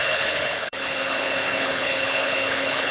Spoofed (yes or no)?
yes